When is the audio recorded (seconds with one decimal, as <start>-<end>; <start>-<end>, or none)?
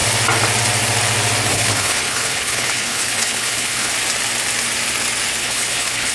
0.0-1.5; 3.9-5.4